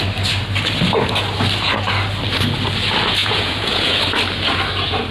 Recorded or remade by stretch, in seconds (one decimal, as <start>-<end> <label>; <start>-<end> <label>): 0.0-3.2 recorded; 3.2-4.0 remade; 4.0-5.1 recorded